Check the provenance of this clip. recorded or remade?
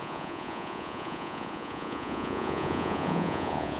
remade